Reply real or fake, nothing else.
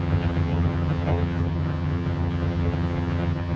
fake